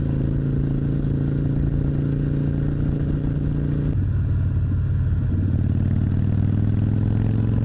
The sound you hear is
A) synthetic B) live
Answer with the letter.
B